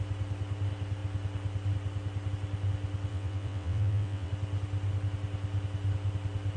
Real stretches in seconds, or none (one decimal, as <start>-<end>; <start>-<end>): 0.0-3.1; 4.3-6.6